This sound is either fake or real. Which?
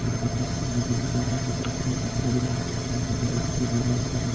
fake